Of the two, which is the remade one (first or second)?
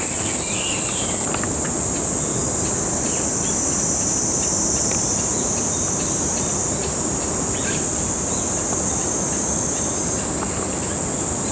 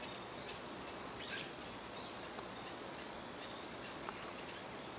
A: second